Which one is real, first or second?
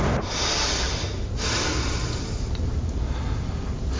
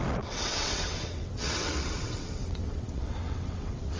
first